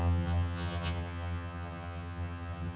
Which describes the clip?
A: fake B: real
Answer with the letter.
A